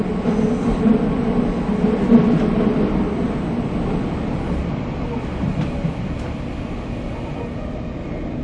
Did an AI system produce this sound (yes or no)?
no